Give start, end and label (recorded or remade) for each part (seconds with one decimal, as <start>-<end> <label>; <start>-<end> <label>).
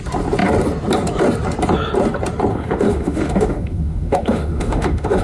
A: 0.0-2.5 recorded; 2.5-5.2 remade